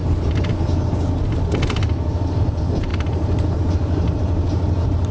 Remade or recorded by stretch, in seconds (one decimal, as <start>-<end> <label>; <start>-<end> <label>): 0.0-0.5 remade; 0.5-2.9 recorded; 2.9-3.6 remade; 3.6-5.1 recorded